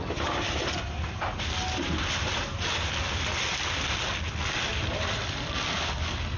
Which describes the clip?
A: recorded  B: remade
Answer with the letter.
A